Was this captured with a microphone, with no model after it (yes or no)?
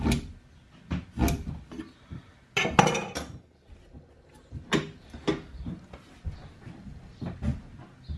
yes